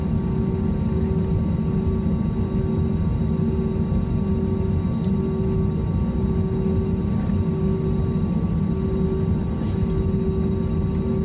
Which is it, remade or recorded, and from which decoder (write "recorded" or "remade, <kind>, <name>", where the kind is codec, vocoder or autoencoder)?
recorded